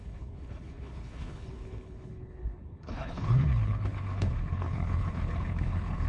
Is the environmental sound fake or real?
fake